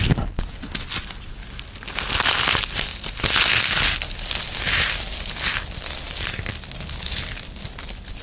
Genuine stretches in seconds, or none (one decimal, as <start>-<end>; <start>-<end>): 0.0-8.2